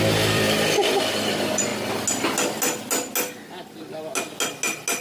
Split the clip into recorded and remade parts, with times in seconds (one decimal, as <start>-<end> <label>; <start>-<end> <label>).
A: 0.0-1.7 remade; 1.7-5.0 recorded